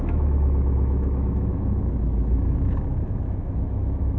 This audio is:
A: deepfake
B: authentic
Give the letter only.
A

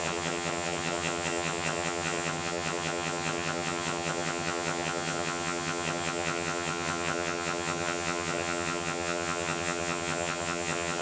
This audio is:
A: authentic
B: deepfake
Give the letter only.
B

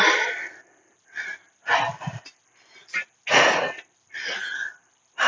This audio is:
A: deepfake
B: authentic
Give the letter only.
B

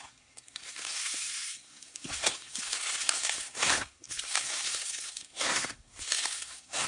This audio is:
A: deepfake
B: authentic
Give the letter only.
A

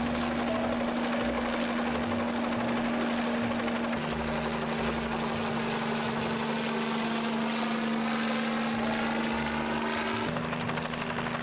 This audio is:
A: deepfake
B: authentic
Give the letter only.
B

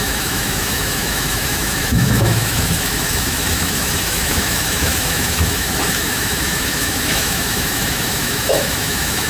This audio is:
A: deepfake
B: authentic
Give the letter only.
A